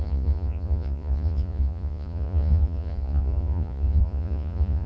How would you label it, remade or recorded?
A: remade